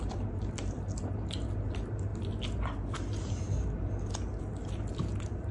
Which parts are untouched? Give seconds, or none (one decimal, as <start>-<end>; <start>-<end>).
0.0-5.5

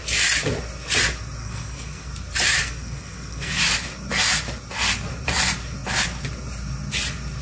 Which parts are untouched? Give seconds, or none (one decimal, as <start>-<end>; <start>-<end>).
0.0-1.4; 2.1-2.6; 3.6-7.4